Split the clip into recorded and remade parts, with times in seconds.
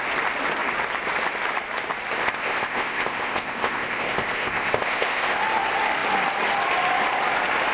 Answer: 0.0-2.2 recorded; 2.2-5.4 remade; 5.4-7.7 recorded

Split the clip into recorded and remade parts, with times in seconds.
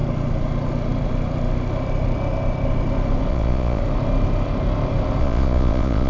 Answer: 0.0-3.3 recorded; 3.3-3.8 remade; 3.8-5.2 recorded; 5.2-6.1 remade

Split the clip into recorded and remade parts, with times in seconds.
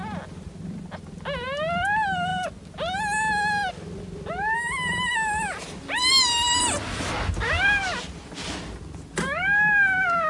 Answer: 0.0-10.3 recorded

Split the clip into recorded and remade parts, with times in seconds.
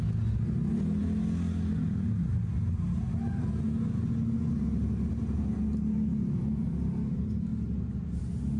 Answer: 0.0-8.6 recorded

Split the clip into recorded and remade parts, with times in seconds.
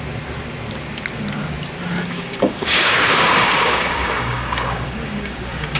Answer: 0.0-2.0 recorded; 2.0-5.8 remade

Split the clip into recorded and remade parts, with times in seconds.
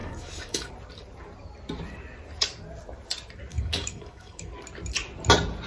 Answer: 0.0-0.7 remade; 0.7-3.5 recorded; 3.5-4.5 remade; 4.5-5.7 recorded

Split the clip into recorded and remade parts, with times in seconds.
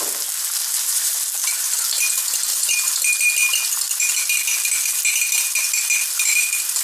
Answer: 0.0-0.6 recorded; 0.6-1.2 remade; 1.2-6.8 recorded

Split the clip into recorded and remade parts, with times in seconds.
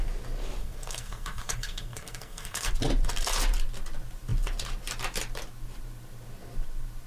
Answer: 0.0-0.6 recorded; 0.6-2.7 remade; 2.7-7.1 recorded